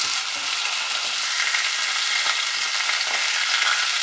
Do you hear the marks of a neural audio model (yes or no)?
no